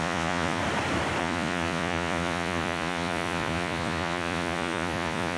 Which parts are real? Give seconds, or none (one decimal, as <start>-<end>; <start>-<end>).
0.6-1.2